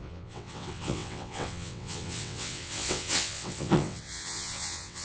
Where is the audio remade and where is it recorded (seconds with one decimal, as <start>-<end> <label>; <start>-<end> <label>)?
0.0-5.0 remade